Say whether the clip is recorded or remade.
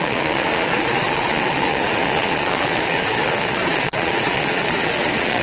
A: remade